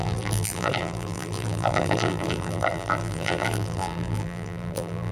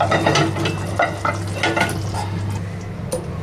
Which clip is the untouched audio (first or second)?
second